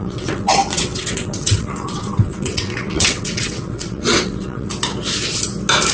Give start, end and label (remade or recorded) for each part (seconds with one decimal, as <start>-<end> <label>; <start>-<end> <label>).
0.0-4.7 remade; 4.7-5.9 recorded